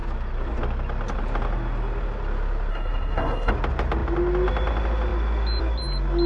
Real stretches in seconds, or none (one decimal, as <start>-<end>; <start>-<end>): 0.0-2.7; 3.5-6.3